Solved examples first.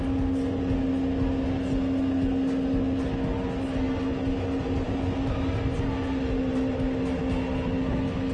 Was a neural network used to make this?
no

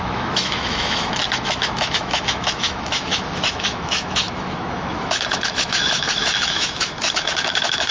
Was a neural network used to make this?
yes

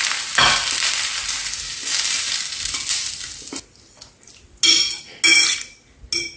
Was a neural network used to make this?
no